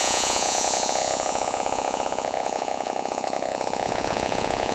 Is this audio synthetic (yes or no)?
yes